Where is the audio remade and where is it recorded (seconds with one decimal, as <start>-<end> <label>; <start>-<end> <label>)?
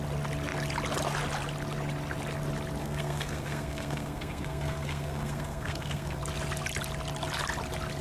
0.0-2.8 recorded; 2.8-6.2 remade; 6.2-8.0 recorded